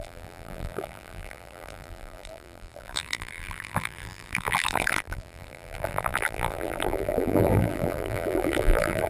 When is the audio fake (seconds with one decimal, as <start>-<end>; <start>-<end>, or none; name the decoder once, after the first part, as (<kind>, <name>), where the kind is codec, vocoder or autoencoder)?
0.0-9.1 (vocoder, BigVGAN v2)